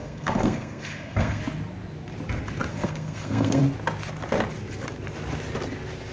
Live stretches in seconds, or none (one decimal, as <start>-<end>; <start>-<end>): 1.4-2.7; 3.6-6.1

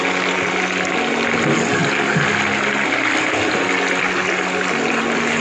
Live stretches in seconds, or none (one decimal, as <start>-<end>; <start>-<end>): 0.0-5.4

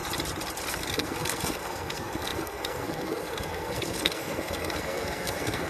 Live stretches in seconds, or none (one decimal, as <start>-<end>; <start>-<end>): 0.0-0.7

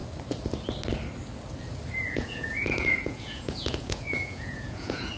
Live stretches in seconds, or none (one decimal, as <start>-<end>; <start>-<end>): 0.0-2.0

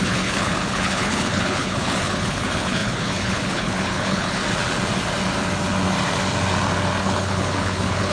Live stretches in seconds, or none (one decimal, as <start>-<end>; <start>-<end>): 4.4-7.0

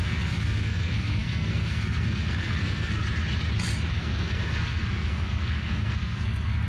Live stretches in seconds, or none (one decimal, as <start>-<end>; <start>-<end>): 3.0-3.9